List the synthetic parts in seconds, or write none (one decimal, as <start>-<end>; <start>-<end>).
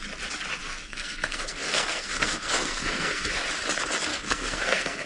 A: 0.6-3.3; 4.1-5.1